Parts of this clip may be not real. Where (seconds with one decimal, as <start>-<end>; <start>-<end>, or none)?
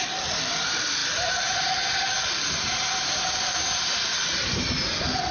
none